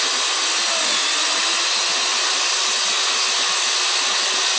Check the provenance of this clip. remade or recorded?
recorded